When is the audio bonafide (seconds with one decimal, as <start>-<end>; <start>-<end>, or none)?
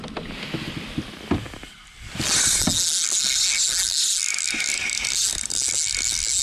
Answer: 0.0-6.4